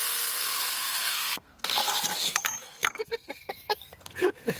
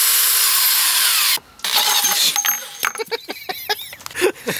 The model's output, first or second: first